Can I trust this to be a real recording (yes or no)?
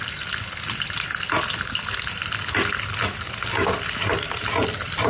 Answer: yes